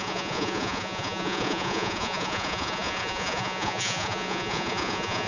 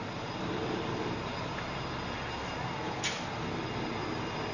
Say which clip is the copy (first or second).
first